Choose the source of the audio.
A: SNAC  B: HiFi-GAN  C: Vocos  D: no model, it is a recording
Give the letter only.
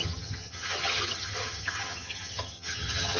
B